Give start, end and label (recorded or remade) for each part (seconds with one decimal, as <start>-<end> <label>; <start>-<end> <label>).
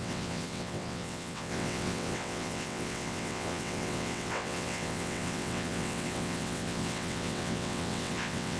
0.0-8.6 remade